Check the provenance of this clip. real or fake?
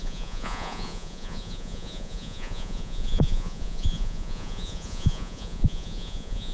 fake